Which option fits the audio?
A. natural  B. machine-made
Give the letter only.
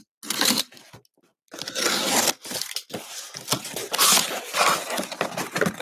A